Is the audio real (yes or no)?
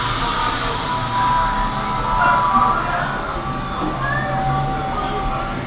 yes